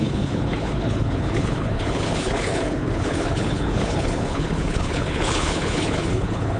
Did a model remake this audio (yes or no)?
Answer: yes